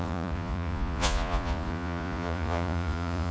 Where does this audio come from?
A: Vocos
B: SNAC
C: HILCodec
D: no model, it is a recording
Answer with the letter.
A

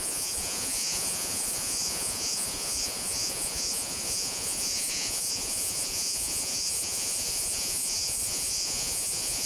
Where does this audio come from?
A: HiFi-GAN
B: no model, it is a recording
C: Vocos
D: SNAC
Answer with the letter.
C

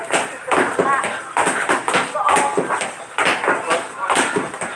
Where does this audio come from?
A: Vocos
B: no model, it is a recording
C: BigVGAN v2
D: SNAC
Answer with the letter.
B